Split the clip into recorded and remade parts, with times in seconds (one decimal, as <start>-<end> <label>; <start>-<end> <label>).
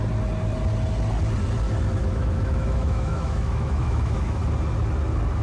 0.0-2.0 recorded; 2.0-4.4 remade; 4.4-5.4 recorded